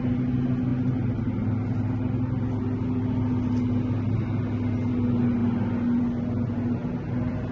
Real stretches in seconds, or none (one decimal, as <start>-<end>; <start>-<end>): 0.0-7.5